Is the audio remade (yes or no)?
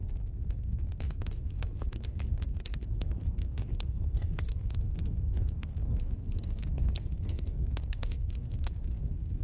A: yes